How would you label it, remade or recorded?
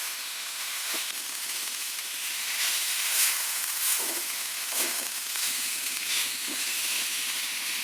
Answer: remade